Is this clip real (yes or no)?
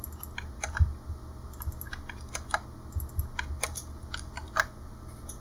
yes